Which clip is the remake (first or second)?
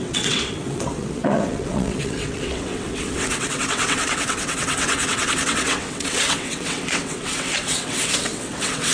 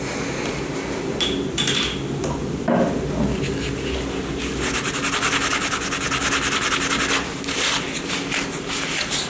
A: first